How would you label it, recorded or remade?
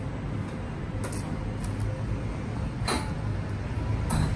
recorded